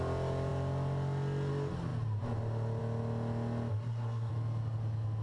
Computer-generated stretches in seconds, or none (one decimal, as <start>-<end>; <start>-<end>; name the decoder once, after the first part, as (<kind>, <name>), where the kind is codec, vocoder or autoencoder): 3.7-4.3 (codec, SNAC)